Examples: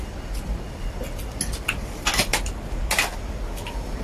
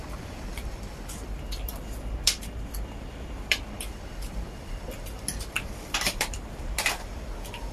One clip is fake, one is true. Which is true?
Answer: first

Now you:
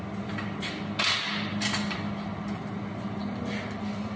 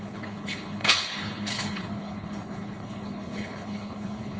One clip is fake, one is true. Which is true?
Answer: first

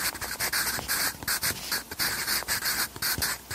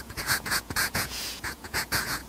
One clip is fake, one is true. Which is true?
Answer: first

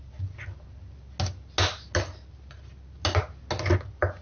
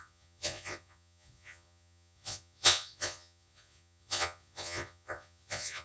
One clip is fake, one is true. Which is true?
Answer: first